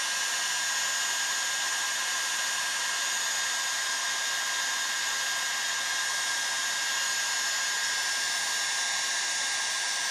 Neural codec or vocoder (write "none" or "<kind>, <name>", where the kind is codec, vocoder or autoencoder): none